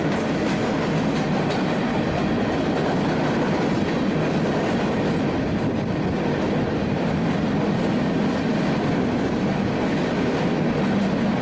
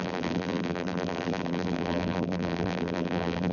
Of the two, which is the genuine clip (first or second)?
first